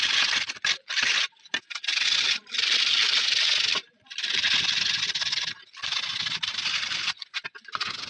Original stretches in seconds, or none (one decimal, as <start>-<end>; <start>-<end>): 0.0-8.1